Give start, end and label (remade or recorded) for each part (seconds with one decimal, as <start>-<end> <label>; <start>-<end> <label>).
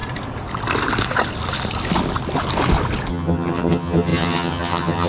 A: 0.0-3.1 recorded; 3.1-5.1 remade